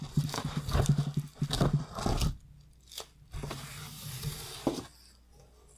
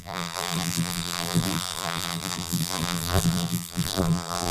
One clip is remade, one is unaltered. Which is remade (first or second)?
second